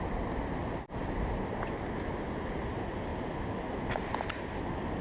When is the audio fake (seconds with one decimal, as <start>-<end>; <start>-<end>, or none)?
none